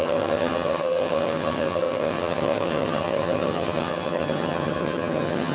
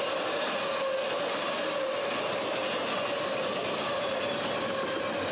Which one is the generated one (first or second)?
first